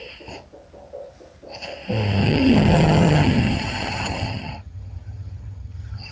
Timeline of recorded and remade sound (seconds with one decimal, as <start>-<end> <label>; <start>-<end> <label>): 0.0-2.2 recorded; 2.2-6.1 remade